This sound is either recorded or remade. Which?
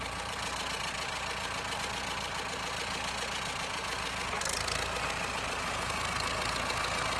recorded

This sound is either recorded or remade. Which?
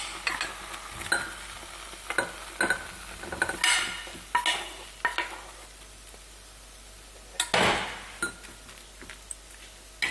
recorded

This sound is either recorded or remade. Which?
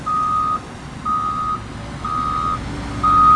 recorded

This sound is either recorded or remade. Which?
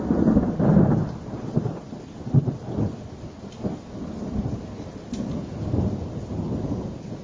recorded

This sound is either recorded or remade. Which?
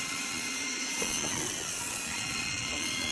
remade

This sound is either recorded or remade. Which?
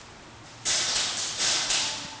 recorded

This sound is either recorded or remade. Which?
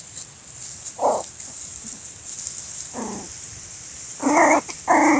recorded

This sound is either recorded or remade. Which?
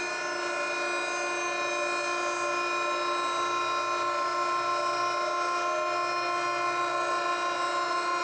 recorded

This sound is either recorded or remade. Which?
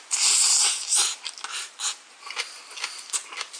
recorded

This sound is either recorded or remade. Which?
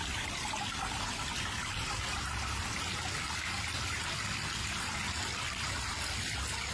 recorded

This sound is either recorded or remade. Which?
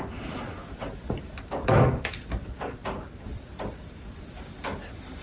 recorded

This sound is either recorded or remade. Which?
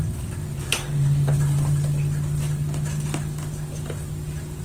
recorded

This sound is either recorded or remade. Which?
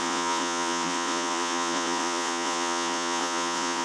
remade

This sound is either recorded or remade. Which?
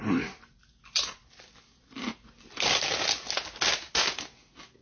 recorded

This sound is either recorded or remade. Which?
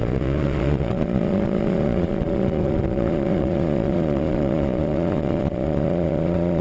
remade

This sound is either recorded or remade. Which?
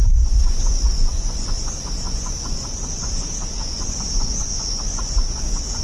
remade